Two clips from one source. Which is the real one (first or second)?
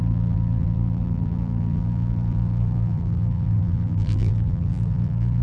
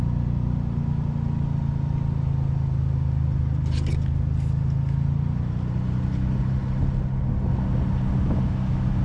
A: second